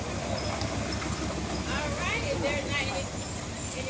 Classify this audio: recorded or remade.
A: recorded